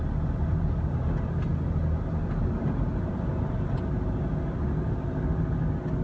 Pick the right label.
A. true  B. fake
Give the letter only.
A